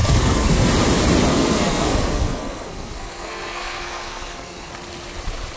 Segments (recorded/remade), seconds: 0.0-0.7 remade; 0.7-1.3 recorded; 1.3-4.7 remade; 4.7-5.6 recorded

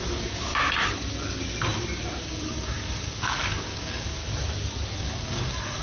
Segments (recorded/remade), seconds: 0.0-0.5 remade; 0.5-2.2 recorded; 2.2-4.2 remade; 4.2-5.0 recorded; 5.0-5.8 remade

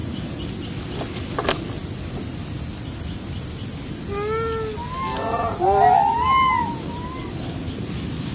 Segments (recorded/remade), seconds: 0.0-8.3 recorded

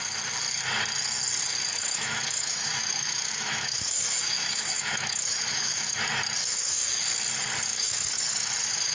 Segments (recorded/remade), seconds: 0.0-1.7 recorded; 1.7-6.0 remade; 6.0-6.4 recorded; 6.4-7.0 remade; 7.0-7.7 recorded; 7.7-8.5 remade; 8.5-8.9 recorded

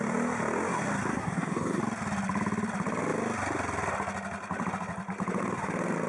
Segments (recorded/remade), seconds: 0.0-1.1 recorded; 1.1-1.8 remade; 1.8-6.1 recorded

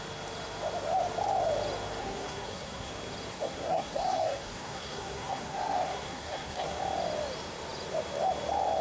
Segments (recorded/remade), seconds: 0.0-2.0 recorded; 2.0-2.9 remade; 2.9-3.3 recorded; 3.3-6.8 remade; 6.8-8.8 recorded

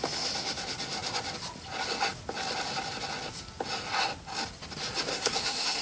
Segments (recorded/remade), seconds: 0.0-5.1 recorded; 5.1-5.8 remade

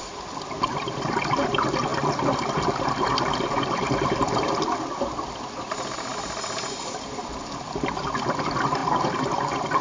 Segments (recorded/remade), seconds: 0.0-9.8 recorded